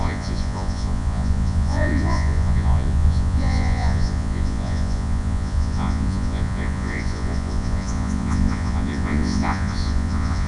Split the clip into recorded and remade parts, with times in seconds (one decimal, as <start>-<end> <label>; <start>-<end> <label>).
0.0-10.5 remade